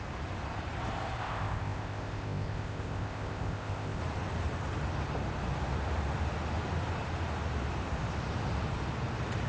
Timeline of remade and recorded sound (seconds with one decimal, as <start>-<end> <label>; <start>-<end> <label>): 0.0-1.2 recorded; 1.2-4.0 remade; 4.0-9.5 recorded